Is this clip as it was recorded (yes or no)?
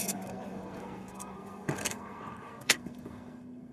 no